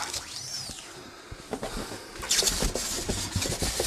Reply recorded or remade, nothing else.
recorded